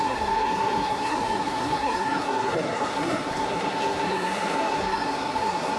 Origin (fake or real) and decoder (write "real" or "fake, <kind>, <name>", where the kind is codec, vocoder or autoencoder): fake, codec, SNAC